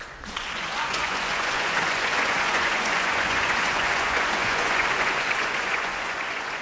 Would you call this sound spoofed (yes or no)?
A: yes